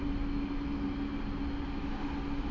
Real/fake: real